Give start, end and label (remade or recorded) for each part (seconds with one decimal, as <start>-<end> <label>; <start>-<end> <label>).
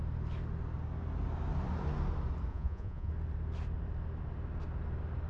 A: 0.0-2.5 recorded; 2.5-3.1 remade; 3.1-5.3 recorded